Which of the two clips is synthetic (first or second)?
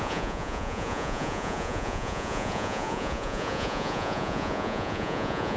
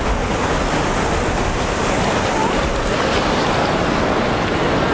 first